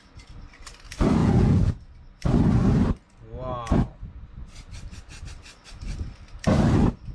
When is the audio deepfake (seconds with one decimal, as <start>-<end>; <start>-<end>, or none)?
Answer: 1.2-1.7